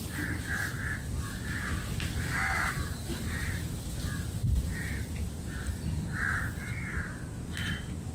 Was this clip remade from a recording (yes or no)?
no